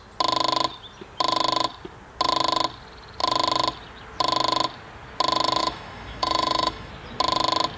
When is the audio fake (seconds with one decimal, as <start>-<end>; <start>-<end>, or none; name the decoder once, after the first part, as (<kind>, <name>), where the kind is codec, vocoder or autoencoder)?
5.6-6.9 (autoencoder, DAC-VAE)